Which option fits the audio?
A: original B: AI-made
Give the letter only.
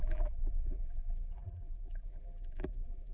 B